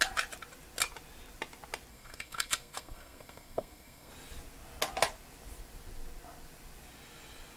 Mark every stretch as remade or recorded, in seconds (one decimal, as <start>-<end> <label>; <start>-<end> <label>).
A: 0.0-1.9 recorded; 1.9-4.1 remade; 4.1-7.6 recorded